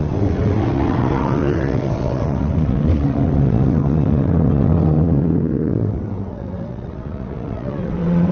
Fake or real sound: fake